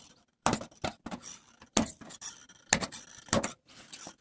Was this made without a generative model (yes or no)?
no